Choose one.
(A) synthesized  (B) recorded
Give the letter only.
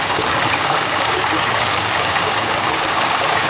A